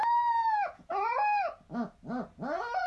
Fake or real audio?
real